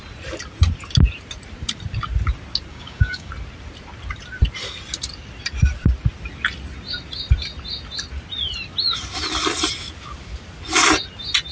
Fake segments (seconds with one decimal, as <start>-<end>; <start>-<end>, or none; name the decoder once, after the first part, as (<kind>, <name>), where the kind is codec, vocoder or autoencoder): 2.7-3.3 (codec, DAC)